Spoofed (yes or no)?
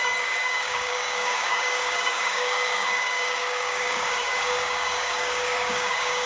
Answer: yes